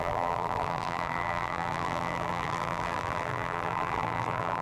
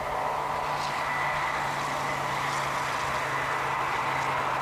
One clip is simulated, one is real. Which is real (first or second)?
second